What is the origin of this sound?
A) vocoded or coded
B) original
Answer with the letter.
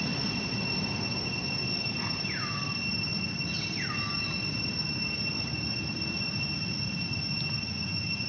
B